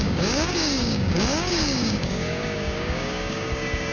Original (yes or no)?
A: no